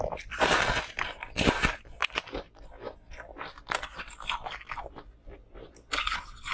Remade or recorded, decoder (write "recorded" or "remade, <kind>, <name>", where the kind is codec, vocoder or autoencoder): recorded